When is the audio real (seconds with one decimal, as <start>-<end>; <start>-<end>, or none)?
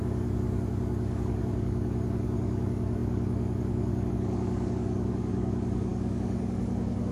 none